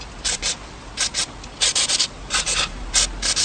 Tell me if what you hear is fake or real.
real